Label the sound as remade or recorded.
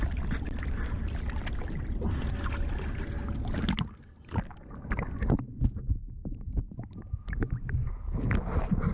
recorded